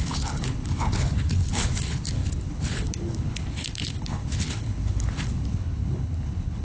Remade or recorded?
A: remade